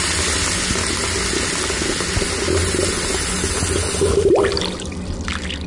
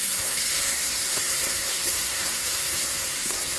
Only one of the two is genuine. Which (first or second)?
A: first